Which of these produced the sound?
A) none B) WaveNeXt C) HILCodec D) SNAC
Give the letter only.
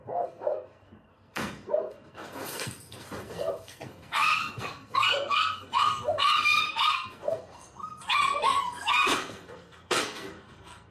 D